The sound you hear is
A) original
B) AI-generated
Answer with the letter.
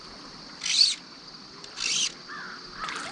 A